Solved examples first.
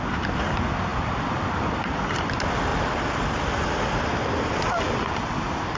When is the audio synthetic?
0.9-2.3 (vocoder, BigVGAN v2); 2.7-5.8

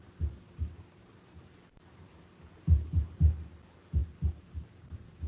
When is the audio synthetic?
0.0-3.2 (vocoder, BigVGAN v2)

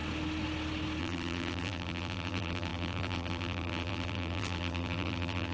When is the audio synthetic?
1.0-5.5 (vocoder, BigVGAN v2)